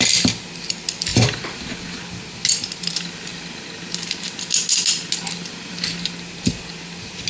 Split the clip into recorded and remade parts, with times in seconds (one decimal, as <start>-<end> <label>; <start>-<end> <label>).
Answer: 0.0-7.3 recorded